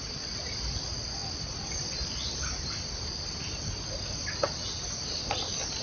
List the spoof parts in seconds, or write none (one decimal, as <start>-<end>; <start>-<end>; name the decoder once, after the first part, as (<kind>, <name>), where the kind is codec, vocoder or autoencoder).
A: none